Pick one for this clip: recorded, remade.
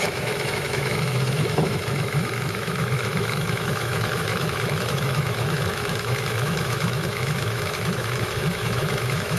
remade